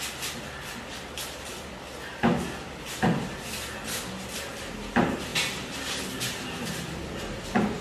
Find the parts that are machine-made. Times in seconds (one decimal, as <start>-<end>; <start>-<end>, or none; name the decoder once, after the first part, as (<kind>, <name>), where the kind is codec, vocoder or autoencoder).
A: none